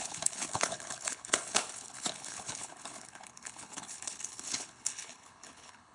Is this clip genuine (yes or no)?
no